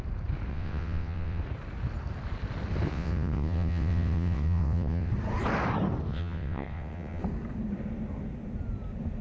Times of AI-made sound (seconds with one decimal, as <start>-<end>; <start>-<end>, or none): 0.5-1.4; 2.9-5.1; 6.1-7.2